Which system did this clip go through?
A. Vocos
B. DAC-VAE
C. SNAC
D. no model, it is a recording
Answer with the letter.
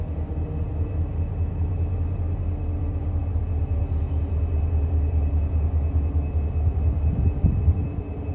D